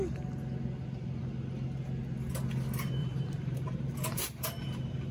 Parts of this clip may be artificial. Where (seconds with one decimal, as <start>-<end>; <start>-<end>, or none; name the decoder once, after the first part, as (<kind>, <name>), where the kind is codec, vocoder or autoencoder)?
3.0-5.1 (vocoder, BigVGAN v2)